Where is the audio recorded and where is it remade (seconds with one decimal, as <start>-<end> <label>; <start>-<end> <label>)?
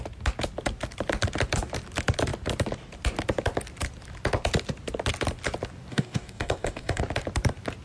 0.0-5.9 recorded; 5.9-7.0 remade; 7.0-7.8 recorded